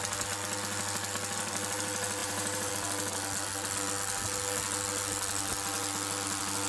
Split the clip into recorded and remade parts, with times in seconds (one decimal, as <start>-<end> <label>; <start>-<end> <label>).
0.0-2.2 recorded; 2.2-2.7 remade; 2.7-6.7 recorded